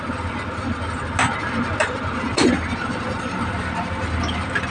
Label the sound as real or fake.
real